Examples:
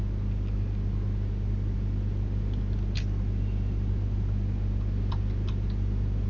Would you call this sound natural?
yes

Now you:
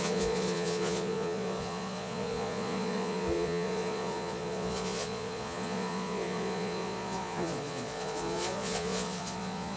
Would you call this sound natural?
no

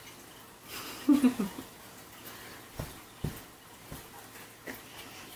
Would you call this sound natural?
yes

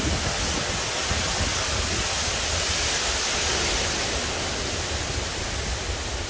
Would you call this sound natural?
yes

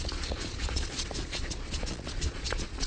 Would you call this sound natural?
no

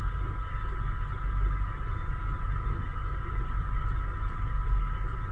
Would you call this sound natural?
yes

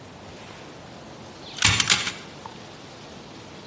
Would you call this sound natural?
yes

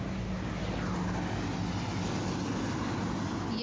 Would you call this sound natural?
yes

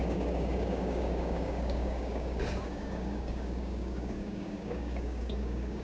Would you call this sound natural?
no